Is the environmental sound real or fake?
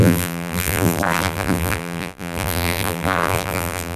fake